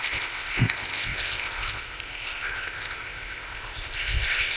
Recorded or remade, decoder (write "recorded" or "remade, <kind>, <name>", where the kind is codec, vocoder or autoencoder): remade, codec, ZipCodec